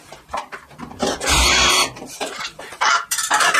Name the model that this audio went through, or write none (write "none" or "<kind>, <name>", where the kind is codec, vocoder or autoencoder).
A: vocoder, BigVGAN v2